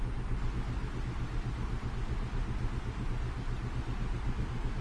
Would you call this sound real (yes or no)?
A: yes